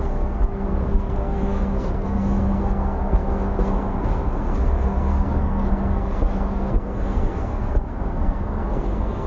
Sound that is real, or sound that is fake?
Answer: fake